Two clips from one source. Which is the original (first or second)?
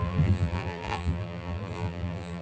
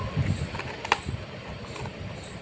second